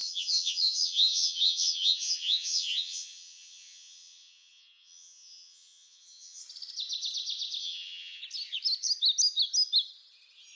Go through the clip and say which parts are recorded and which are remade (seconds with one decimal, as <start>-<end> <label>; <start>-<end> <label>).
0.0-6.4 remade; 6.4-7.6 recorded; 7.6-8.2 remade; 8.2-10.6 recorded